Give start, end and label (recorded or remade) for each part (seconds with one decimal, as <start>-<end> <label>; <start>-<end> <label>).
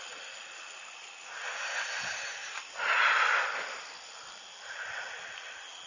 0.0-5.9 recorded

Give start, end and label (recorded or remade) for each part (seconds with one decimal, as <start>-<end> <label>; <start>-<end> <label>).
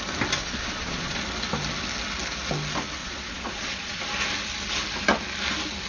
0.0-0.4 recorded; 0.4-1.2 remade; 1.2-3.0 recorded; 3.0-4.0 remade; 4.0-5.9 recorded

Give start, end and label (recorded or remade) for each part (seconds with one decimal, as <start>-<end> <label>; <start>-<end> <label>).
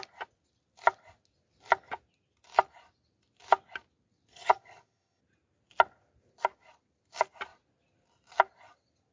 0.0-4.3 recorded; 4.3-5.2 remade; 5.2-9.1 recorded